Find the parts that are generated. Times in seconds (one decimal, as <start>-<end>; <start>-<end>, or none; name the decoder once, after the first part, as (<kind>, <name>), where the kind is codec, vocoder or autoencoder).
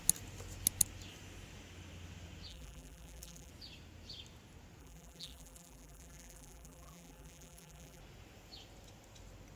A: 2.5-3.5 (vocoder, BigVGAN v2); 4.8-8.0